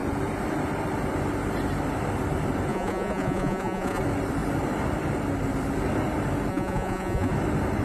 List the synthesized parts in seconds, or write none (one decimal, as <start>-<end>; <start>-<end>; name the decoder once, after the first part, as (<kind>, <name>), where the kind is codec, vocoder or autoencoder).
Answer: 2.7-4.0 (vocoder, Vocos); 6.5-7.3